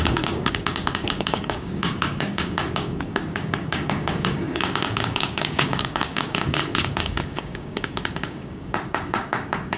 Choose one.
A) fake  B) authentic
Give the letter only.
A